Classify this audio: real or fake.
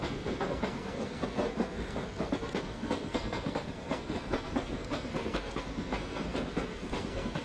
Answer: fake